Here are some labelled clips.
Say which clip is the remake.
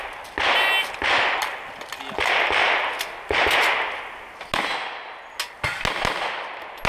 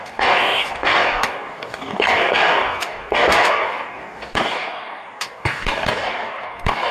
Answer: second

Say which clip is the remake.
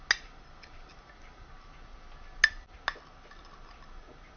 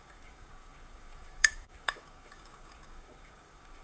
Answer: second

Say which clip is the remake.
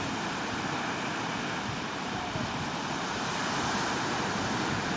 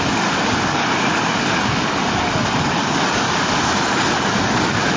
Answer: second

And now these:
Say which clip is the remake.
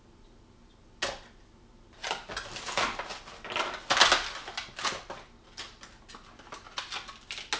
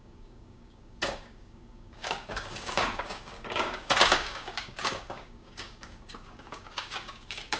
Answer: second